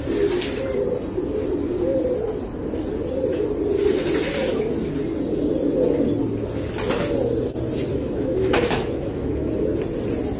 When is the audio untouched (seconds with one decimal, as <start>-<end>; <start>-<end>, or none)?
0.0-7.9; 9.5-10.4